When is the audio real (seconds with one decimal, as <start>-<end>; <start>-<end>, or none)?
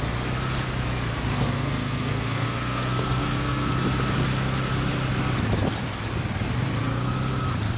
0.0-1.3; 3.7-7.8